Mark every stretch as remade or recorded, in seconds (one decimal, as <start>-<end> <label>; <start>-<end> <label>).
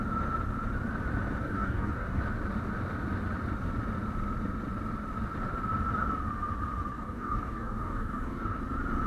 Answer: 0.0-1.4 recorded; 1.4-2.2 remade; 2.2-6.9 recorded; 6.9-8.6 remade; 8.6-9.1 recorded